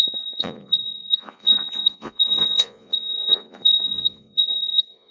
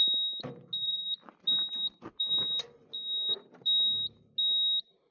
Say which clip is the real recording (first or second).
second